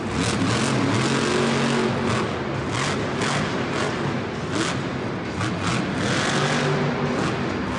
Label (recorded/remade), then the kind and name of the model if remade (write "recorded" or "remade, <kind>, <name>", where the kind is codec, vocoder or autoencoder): recorded